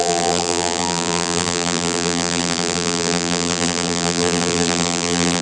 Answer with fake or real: fake